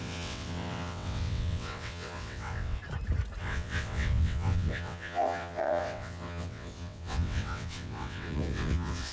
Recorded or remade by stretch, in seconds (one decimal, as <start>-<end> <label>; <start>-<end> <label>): 0.0-2.8 remade; 2.8-3.4 recorded; 3.4-9.1 remade